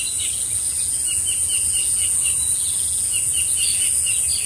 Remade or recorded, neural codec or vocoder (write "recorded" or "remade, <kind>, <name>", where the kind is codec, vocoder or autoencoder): recorded